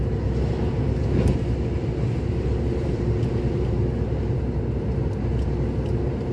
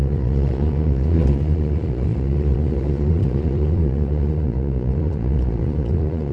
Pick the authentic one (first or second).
first